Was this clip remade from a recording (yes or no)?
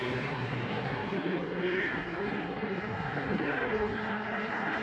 yes